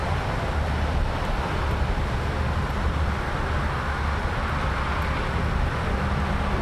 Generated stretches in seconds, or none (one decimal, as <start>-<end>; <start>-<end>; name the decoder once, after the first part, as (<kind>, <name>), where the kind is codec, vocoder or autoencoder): none